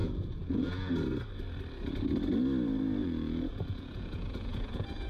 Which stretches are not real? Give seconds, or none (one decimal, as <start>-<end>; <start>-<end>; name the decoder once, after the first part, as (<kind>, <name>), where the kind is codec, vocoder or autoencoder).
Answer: 0.0-0.9 (vocoder, Vocos); 3.0-5.1